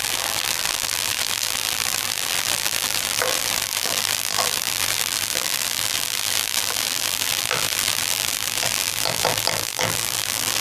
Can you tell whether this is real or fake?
fake